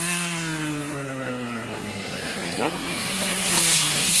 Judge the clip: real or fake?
fake